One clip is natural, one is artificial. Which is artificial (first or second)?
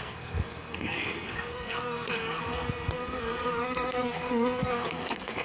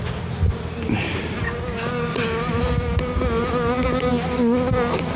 first